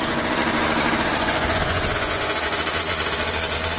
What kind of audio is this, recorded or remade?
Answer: remade